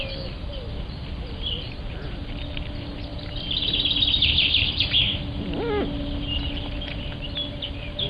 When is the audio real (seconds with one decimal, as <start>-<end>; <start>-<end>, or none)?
0.0-8.1